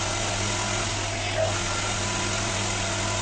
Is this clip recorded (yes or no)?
yes